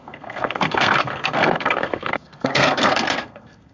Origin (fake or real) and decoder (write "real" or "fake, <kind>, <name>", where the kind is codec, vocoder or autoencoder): fake, codec, SNAC